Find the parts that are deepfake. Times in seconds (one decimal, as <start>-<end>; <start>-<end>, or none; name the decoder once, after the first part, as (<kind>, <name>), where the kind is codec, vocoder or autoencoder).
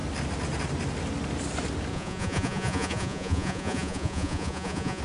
1.9-5.0 (vocoder, Vocos)